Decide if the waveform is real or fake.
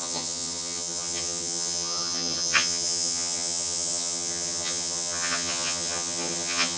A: fake